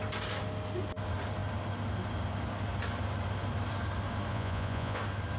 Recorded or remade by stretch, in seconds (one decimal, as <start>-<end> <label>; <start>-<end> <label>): 0.0-4.3 recorded; 4.3-5.0 remade; 5.0-5.4 recorded